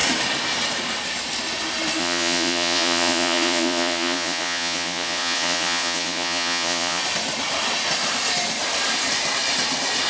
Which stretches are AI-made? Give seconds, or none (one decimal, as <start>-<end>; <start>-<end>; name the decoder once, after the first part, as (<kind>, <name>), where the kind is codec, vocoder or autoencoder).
2.0-7.0 (vocoder, Vocos)